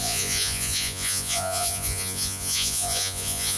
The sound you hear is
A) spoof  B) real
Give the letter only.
A